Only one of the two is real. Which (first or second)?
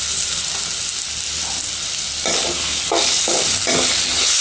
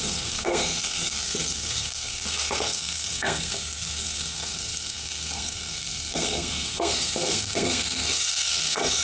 first